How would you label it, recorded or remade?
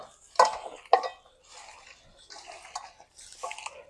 recorded